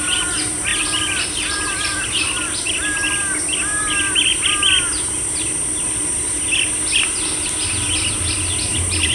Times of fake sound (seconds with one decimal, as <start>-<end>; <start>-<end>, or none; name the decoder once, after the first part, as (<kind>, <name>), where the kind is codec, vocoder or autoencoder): none